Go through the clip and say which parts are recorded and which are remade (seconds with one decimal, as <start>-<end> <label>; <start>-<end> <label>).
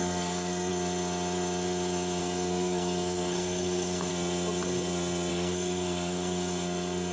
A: 0.0-0.7 remade; 0.7-2.2 recorded; 2.2-4.1 remade; 4.1-5.3 recorded; 5.3-7.1 remade